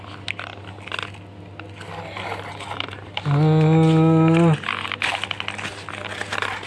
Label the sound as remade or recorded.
recorded